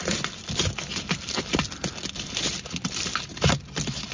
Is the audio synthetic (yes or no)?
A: no